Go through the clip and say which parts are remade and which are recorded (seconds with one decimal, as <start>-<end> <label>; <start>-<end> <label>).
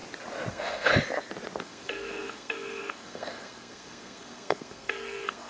0.0-0.5 recorded; 0.5-0.9 remade; 0.9-1.6 recorded; 1.6-5.5 remade